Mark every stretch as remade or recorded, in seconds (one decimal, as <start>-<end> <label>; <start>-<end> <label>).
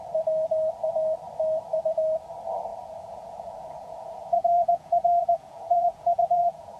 0.0-2.7 recorded; 2.7-6.8 remade